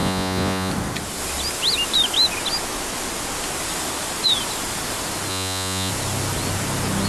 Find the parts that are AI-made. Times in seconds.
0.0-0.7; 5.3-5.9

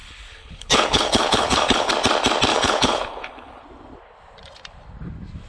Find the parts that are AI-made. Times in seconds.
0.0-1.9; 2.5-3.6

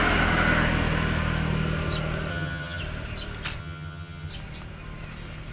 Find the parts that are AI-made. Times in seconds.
2.3-2.8; 3.6-4.3

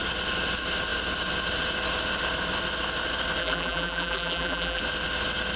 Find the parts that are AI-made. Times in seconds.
3.4-4.8

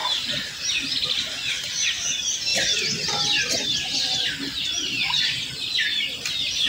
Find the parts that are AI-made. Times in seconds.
2.5-5.5

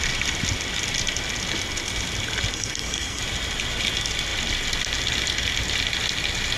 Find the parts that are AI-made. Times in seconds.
2.5-3.2